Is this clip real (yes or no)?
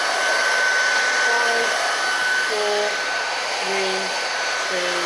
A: yes